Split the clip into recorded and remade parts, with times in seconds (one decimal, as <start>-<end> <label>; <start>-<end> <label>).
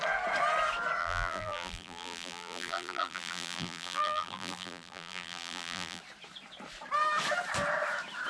0.0-1.0 recorded; 1.0-6.0 remade; 6.0-8.3 recorded